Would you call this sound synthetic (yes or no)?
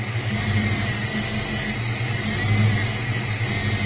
no